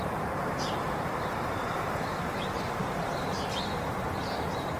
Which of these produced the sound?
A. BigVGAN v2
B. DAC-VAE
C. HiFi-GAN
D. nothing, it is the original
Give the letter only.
A